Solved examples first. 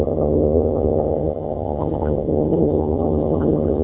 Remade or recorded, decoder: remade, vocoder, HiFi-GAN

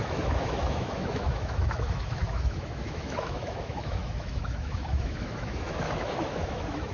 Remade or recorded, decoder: remade, autoencoder, DAC-VAE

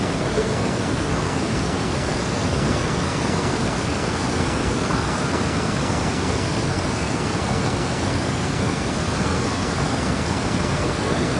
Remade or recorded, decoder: remade, codec, SNAC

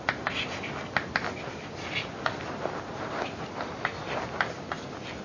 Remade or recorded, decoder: recorded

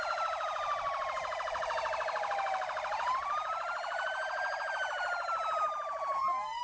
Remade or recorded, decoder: remade, vocoder, BigVGAN v2